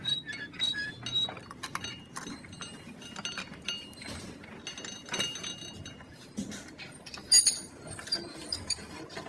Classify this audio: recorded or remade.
recorded